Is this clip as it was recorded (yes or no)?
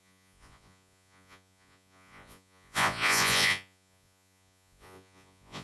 no